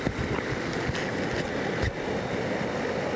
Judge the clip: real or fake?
real